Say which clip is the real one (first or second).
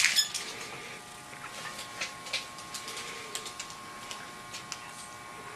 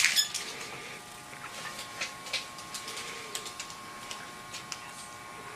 first